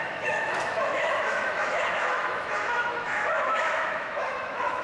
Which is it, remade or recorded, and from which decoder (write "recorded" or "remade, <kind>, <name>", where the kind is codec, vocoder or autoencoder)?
remade, autoencoder, DAC-VAE